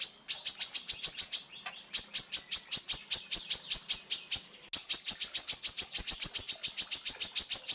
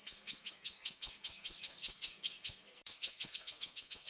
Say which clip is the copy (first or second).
second